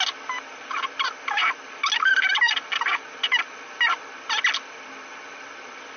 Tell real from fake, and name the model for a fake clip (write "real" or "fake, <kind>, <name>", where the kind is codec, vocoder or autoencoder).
real